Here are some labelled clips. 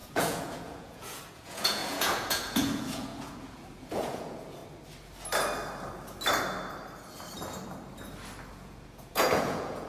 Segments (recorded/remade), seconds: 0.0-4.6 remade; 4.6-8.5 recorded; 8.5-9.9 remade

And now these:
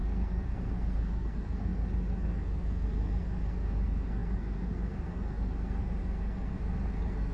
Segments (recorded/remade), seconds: 0.0-7.3 remade

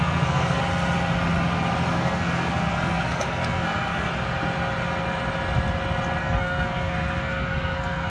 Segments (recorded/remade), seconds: 0.0-0.6 remade; 0.6-1.9 recorded; 1.9-4.1 remade; 4.1-6.2 recorded; 6.2-8.1 remade

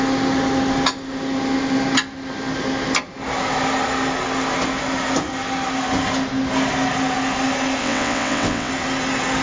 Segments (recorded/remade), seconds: 0.0-7.8 recorded; 7.8-8.7 remade; 8.7-9.4 recorded

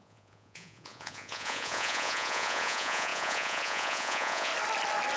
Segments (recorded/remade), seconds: 0.0-4.5 remade; 4.5-5.2 recorded

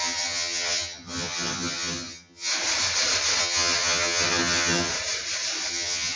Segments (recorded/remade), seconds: 0.0-2.5 remade; 2.5-3.4 recorded; 3.4-4.9 remade; 4.9-5.7 recorded; 5.7-6.2 remade

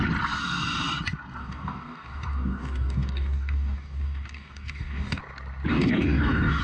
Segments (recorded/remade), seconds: 0.0-1.4 recorded; 1.4-5.2 remade; 5.2-5.7 recorded; 5.7-6.6 remade

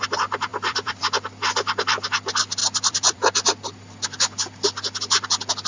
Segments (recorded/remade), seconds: 0.0-0.5 recorded; 0.5-1.0 remade; 1.0-2.6 recorded; 2.6-3.3 remade; 3.3-5.7 recorded